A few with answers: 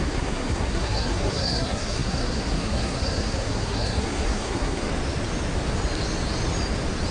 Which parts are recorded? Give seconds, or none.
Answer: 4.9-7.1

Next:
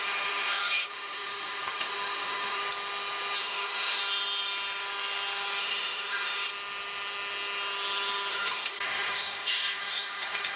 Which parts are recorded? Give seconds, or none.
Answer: 2.6-3.4; 4.0-5.6; 6.5-8.3

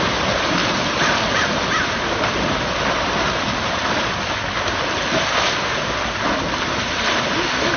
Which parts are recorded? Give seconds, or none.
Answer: 0.0-0.6; 2.6-7.8

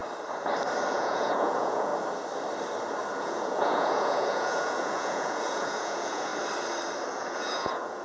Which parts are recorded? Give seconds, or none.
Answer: 0.0-0.9; 1.9-3.2; 6.3-7.1

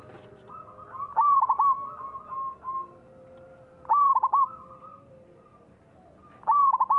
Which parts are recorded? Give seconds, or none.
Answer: 0.0-7.0

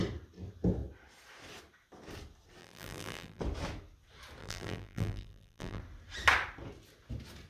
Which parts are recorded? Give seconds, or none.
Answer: 0.0-2.6; 3.4-4.4; 5.8-7.5

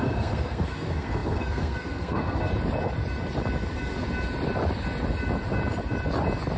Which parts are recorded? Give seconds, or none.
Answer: 2.5-6.6

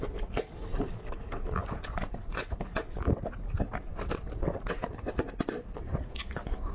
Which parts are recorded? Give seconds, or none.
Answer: 0.0-6.7